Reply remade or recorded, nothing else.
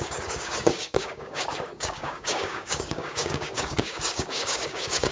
remade